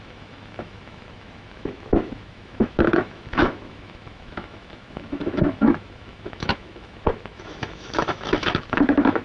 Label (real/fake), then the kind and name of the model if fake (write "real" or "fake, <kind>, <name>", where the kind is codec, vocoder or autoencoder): fake, autoencoder, DAC-VAE